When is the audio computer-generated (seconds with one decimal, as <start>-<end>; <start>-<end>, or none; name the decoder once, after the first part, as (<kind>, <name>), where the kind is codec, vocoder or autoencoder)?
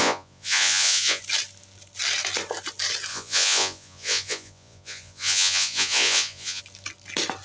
0.0-1.2 (vocoder, Vocos); 3.1-6.6